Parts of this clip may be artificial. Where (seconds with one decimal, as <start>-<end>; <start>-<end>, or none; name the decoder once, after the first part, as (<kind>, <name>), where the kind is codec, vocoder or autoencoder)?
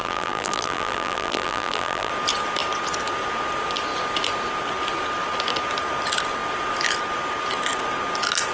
0.0-2.1 (vocoder, BigVGAN v2)